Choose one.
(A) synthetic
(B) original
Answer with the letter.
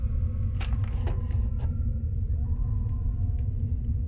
B